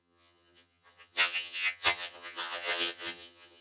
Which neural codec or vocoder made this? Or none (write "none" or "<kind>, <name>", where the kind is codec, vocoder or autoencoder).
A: vocoder, HiFi-GAN